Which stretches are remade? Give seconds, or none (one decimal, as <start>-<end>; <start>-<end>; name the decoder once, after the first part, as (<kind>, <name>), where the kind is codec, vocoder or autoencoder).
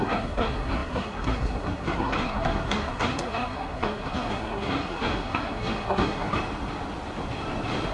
0.0-6.3 (codec, SNAC)